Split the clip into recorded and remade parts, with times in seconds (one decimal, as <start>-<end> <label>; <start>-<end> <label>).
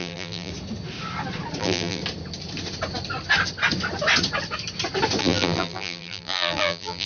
0.0-0.5 remade; 0.5-1.6 recorded; 1.6-2.0 remade; 2.0-5.2 recorded; 5.2-7.1 remade